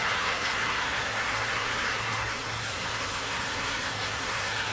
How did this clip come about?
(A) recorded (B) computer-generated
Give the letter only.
B